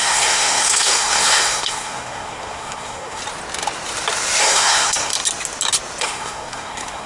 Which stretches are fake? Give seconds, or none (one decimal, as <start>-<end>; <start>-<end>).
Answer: 0.0-3.2; 4.4-5.1; 6.0-7.1